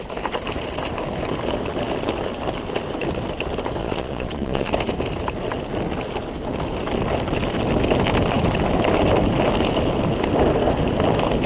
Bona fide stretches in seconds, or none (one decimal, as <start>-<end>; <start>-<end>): 0.0-3.8; 4.7-11.5